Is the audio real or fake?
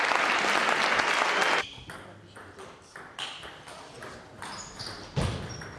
real